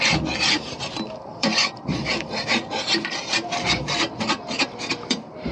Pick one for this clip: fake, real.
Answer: fake